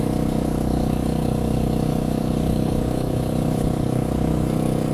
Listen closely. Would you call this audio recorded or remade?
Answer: remade